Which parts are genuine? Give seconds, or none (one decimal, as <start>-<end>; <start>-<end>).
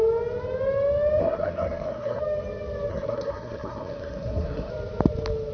0.0-1.2; 2.2-2.9; 4.7-5.5